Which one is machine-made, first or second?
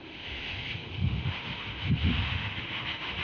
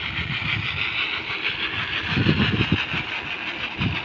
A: first